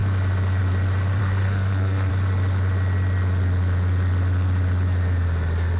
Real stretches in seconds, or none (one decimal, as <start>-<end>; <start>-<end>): 0.0-1.2; 2.1-5.8